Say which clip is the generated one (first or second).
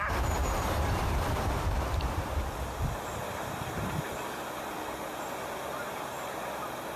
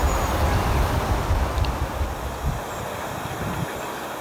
first